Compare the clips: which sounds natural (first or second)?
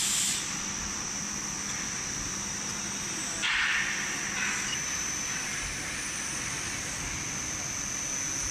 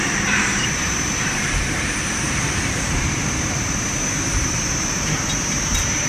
first